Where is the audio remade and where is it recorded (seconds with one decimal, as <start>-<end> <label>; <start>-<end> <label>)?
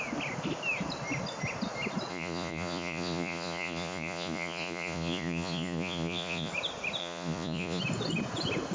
0.0-2.1 recorded; 2.1-6.5 remade; 6.5-7.0 recorded; 7.0-7.8 remade; 7.8-8.7 recorded